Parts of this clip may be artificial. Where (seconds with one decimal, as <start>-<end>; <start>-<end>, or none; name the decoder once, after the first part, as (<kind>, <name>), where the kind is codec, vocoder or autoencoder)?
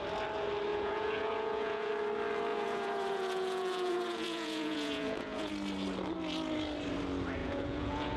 0.7-1.9 (vocoder, Vocos); 2.5-5.5; 7.4-8.2